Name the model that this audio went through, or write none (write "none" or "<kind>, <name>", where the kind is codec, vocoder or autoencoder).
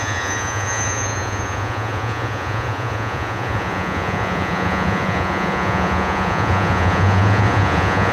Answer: vocoder, Vocos